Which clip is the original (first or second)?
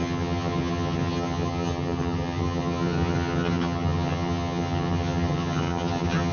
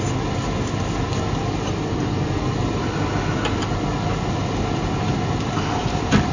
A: second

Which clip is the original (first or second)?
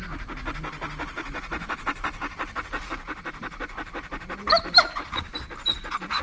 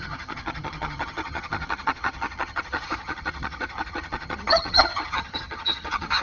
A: first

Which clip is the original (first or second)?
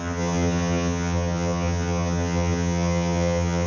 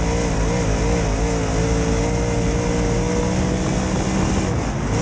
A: second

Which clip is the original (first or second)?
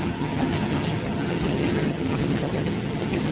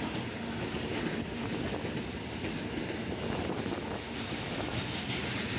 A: second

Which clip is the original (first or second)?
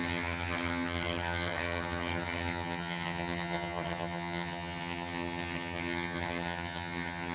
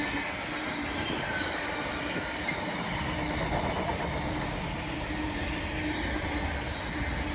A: second